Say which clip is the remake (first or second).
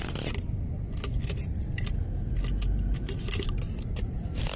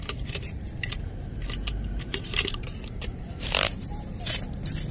second